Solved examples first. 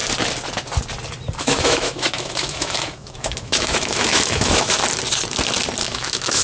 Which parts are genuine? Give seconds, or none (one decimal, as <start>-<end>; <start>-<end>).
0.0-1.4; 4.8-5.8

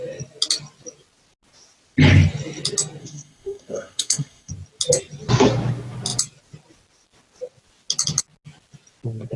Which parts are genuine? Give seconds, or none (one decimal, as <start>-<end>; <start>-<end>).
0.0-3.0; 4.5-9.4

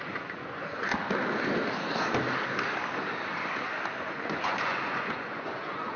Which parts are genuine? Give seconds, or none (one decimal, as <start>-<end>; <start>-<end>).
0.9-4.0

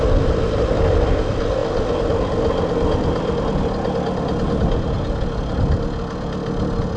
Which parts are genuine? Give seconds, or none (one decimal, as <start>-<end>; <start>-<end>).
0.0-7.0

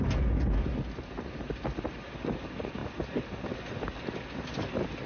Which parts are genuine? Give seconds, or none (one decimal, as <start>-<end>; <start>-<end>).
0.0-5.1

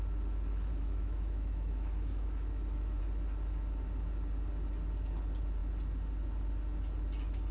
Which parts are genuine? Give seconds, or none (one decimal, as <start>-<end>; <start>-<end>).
0.0-0.7; 3.0-7.5

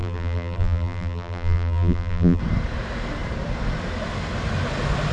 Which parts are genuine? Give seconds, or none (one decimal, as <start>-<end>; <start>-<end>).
2.4-5.1

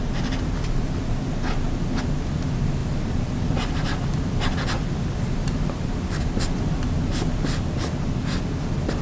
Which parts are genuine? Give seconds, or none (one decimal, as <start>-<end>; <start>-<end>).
0.0-2.8; 7.5-9.0